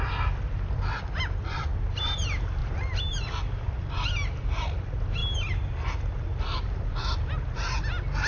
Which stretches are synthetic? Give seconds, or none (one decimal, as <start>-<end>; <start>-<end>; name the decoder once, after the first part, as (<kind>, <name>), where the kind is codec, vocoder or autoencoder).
none